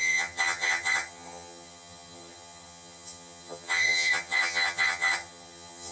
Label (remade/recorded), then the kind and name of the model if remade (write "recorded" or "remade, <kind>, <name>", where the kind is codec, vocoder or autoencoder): remade, vocoder, HiFi-GAN